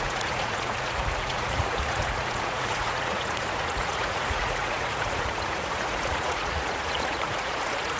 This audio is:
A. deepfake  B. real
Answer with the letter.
A